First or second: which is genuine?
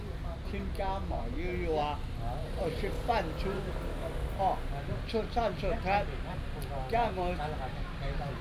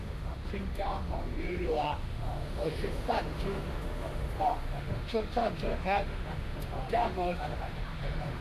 first